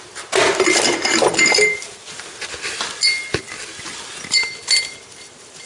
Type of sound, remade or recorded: recorded